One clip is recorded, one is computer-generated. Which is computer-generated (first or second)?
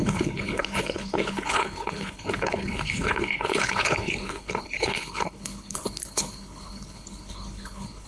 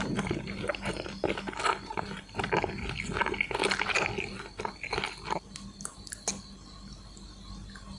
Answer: first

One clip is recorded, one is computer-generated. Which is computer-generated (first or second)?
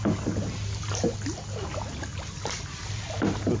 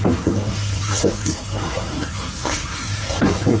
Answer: second